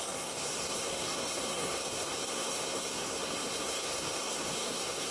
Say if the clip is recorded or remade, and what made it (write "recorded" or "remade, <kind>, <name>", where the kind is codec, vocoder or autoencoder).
remade, codec, SNAC